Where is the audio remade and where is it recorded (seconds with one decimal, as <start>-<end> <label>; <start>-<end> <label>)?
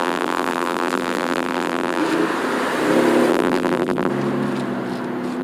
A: 0.0-2.0 remade; 2.0-3.3 recorded; 3.3-4.1 remade; 4.1-5.4 recorded